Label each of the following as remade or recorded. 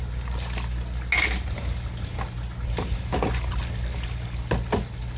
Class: recorded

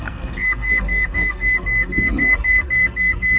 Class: remade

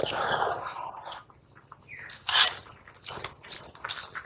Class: recorded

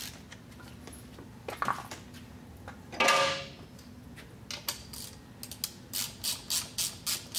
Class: recorded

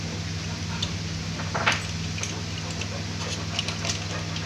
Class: recorded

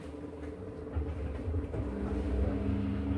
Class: recorded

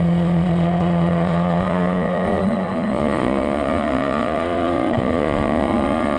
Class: remade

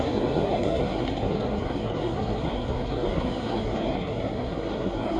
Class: remade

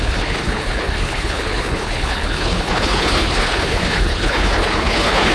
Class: remade